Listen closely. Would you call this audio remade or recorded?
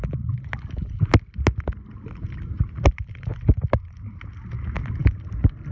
recorded